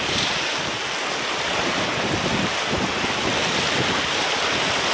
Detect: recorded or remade recorded